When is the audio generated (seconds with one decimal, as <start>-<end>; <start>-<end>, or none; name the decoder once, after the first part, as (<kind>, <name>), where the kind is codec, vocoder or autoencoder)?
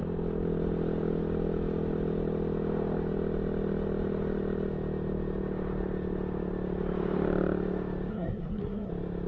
8.1-8.9 (codec, SNAC)